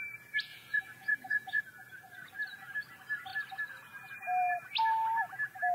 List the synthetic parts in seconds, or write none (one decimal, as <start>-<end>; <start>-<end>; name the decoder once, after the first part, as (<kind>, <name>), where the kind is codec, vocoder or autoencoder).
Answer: 0.5-1.6 (vocoder, Vocos)